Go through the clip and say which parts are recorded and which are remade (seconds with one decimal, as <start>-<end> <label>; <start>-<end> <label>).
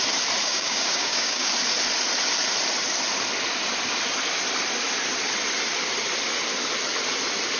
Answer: 0.0-0.4 recorded; 0.4-1.5 remade; 1.5-7.6 recorded